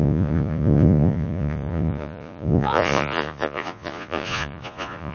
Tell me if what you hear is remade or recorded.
remade